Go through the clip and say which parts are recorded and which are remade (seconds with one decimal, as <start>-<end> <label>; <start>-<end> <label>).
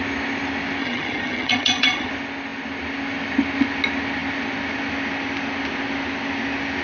0.0-0.8 recorded; 0.8-2.1 remade; 2.1-6.8 recorded